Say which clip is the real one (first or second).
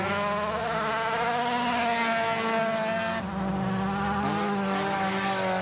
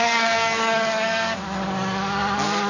first